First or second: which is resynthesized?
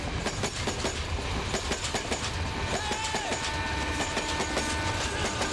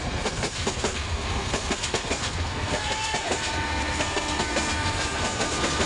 second